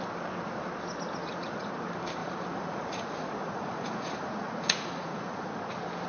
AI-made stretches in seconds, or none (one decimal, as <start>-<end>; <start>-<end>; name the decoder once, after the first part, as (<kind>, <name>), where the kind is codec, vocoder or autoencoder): 1.2-1.7 (vocoder, Vocos); 2.2-5.6